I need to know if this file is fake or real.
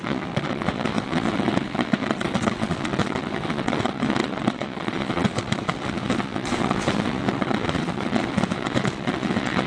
fake